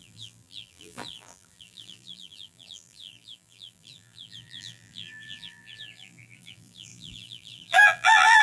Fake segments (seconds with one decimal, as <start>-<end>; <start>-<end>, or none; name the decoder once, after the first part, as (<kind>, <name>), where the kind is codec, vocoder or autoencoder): 0.0-8.4 (vocoder, BigVGAN v2)